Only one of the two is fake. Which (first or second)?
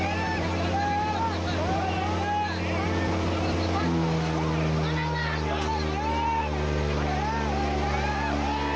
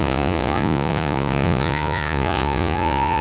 second